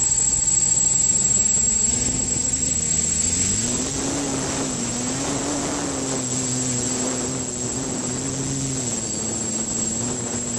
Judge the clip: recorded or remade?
recorded